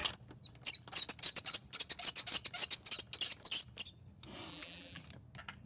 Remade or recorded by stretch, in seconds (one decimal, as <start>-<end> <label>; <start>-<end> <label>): 0.0-4.5 recorded; 4.5-5.0 remade; 5.0-5.7 recorded